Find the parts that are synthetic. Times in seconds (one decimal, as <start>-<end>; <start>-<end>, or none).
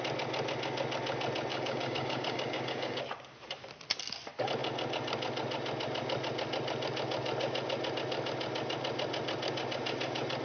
1.5-3.0